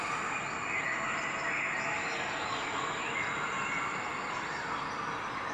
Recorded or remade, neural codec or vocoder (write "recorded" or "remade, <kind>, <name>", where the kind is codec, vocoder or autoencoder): recorded